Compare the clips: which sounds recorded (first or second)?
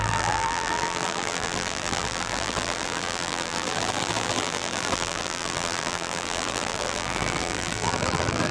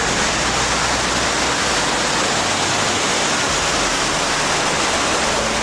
second